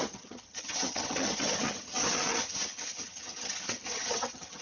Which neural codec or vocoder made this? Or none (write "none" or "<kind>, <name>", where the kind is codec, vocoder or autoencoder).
vocoder, HiFi-GAN